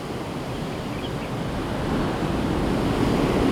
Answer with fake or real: real